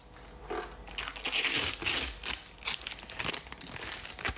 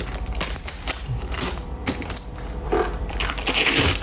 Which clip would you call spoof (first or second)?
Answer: second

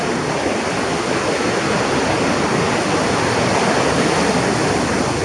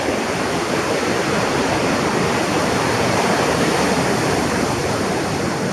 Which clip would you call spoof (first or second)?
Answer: second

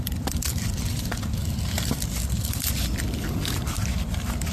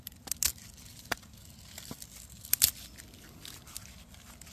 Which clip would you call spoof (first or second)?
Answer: first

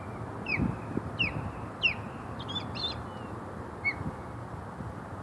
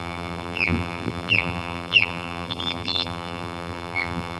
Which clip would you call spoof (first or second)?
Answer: second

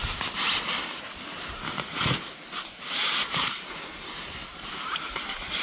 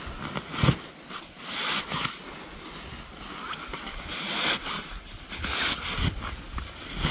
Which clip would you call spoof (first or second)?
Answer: first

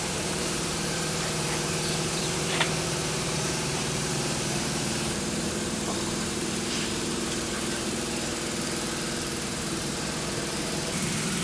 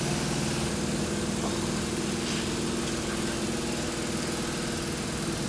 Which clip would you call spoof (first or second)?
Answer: first